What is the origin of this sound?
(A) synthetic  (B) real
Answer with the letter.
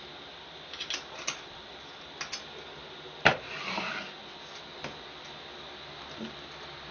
B